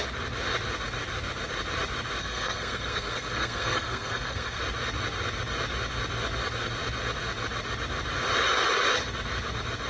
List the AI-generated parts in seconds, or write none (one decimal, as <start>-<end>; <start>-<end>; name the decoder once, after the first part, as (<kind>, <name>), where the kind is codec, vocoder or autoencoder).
2.2-4.6 (codec, SNAC)